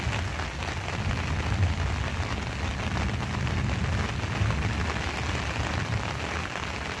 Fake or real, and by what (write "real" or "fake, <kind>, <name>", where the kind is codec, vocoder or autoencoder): real